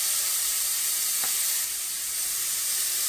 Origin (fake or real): real